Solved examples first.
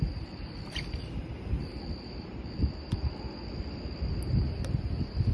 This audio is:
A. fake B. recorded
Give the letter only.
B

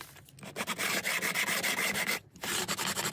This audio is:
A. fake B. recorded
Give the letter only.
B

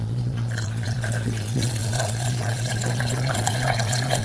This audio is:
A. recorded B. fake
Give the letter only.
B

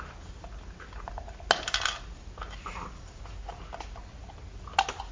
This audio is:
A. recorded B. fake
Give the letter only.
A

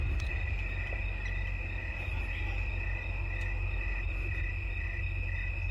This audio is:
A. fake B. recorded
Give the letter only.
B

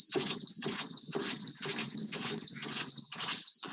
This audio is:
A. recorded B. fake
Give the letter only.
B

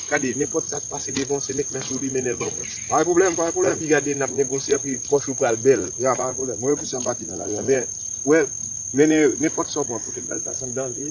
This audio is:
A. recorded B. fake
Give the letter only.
B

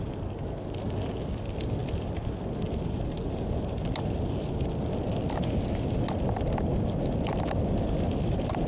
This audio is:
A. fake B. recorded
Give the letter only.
B